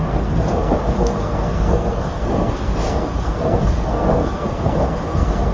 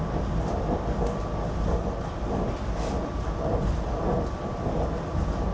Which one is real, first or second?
second